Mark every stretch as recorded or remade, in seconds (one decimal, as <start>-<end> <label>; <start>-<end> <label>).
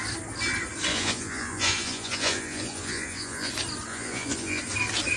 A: 0.0-0.9 recorded; 0.9-3.5 remade; 3.5-3.9 recorded; 3.9-4.6 remade; 4.6-5.2 recorded